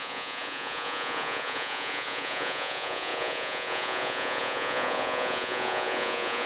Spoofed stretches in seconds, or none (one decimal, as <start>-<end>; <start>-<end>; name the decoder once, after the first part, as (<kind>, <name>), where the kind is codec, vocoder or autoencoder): 0.0-6.5 (vocoder, Vocos)